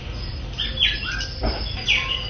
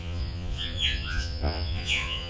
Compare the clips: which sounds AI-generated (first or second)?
second